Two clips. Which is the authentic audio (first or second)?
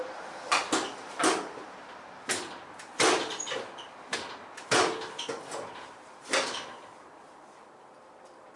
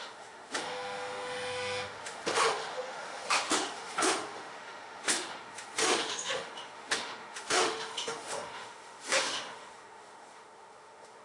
first